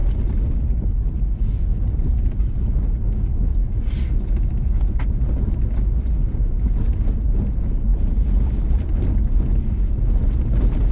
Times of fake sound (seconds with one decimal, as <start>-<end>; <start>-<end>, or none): 1.7-2.4; 7.9-9.4